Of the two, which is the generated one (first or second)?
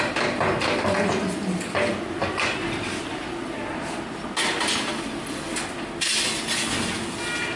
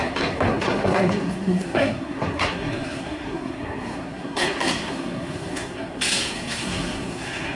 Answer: second